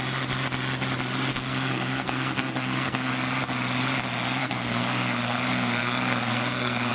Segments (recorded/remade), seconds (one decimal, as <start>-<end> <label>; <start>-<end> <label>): 0.0-1.3 recorded; 1.3-3.1 remade; 3.1-4.4 recorded; 4.4-6.9 remade